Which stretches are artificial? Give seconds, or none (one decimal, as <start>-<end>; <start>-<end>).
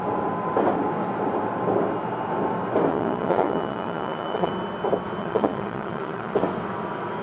2.9-4.5; 5.2-6.4